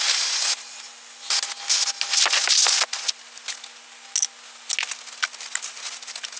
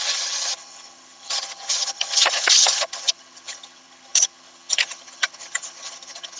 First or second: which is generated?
second